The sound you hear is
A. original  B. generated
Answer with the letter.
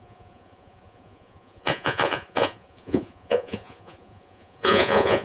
B